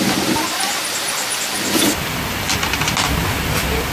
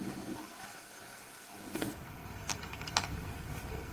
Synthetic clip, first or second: second